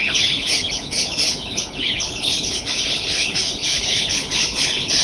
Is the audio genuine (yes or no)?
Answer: no